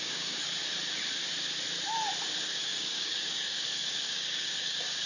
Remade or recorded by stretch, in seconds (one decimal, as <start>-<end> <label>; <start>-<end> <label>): 0.0-0.6 remade; 0.6-2.6 recorded; 2.6-5.1 remade